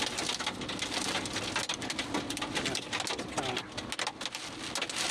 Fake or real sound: real